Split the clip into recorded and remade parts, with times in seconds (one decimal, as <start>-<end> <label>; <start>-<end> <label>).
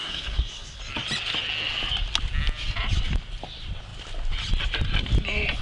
0.0-0.8 remade; 0.8-5.6 recorded